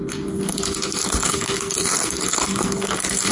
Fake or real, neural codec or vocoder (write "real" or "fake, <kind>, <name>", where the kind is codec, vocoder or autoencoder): fake, codec, SNAC